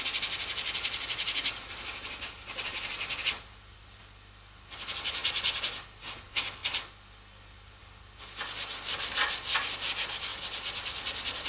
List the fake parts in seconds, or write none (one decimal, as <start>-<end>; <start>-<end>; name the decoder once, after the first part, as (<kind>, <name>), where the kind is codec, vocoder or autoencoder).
none